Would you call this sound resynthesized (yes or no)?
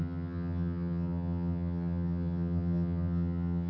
yes